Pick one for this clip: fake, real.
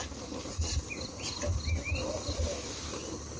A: real